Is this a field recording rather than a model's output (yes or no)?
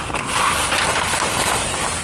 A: yes